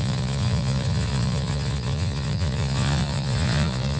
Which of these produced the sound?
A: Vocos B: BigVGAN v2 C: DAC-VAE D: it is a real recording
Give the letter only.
A